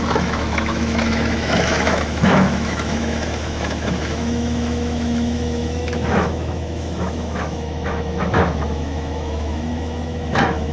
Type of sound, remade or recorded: remade